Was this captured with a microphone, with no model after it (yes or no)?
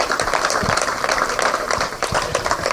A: no